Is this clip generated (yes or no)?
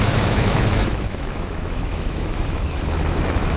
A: yes